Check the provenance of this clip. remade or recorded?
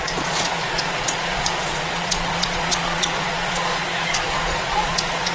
remade